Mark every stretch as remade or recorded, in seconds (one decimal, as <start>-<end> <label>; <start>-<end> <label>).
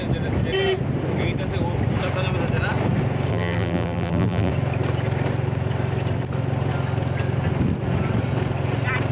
0.0-3.3 recorded; 3.3-4.5 remade; 4.5-9.1 recorded